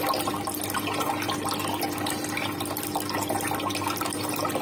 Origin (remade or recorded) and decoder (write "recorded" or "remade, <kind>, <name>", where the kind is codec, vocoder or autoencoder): recorded